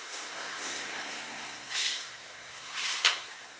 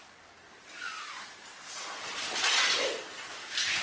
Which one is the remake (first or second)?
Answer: first